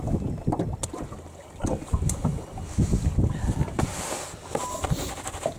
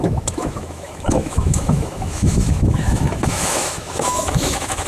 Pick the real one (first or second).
first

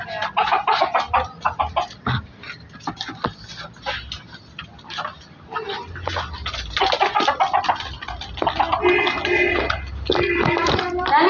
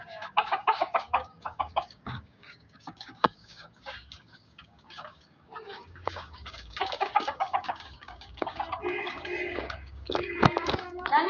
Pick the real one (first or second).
first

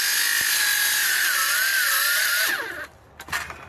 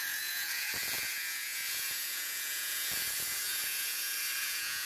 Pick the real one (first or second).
first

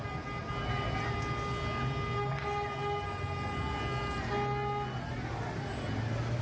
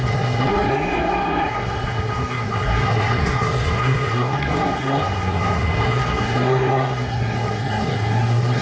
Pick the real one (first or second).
first